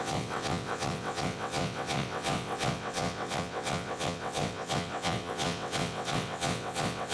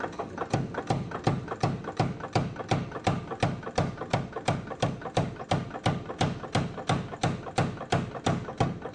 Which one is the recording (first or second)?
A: second